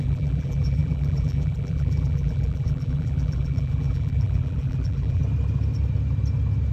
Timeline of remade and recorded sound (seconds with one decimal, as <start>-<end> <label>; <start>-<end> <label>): 0.0-5.2 remade; 5.2-6.7 recorded